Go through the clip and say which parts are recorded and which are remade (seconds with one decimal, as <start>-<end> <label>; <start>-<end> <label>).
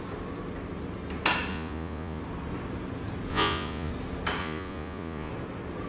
0.0-1.5 recorded; 1.5-2.2 remade; 2.2-3.3 recorded; 3.3-3.9 remade; 3.9-4.4 recorded; 4.4-5.3 remade; 5.3-5.9 recorded